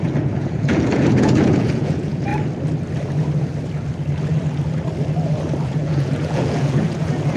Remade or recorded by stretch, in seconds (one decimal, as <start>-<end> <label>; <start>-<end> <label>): 0.0-2.3 remade; 2.3-5.7 recorded; 5.7-7.4 remade